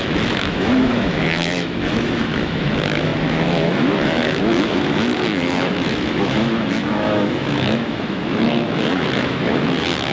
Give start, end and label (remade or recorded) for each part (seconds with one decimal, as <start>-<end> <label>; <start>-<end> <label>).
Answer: 0.0-10.1 remade